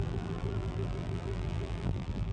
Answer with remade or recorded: remade